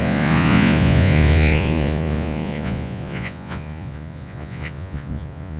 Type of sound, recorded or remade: remade